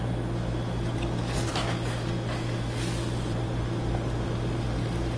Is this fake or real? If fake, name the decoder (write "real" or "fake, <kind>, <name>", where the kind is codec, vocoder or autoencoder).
real